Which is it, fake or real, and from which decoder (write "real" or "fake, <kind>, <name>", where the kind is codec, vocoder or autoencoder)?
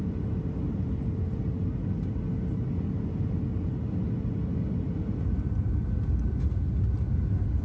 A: real